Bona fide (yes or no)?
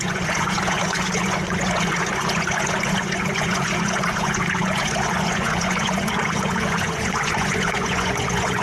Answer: no